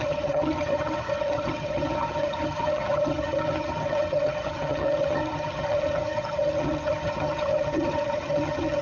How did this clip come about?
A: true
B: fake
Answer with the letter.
B